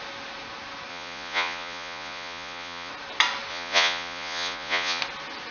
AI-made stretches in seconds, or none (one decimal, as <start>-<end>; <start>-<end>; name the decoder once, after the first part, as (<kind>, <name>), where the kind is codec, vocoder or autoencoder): 0.9-2.9 (vocoder, Vocos); 3.5-5.0